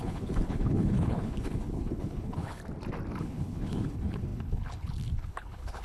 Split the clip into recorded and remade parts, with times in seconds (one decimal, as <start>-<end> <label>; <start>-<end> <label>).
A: 0.0-2.6 remade; 2.6-3.2 recorded; 3.2-5.8 remade